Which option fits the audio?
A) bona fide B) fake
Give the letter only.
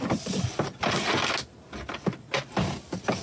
A